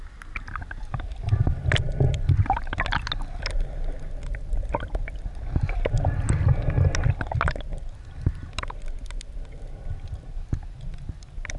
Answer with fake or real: real